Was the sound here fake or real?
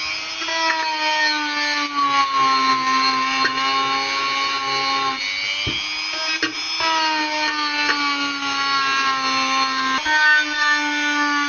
real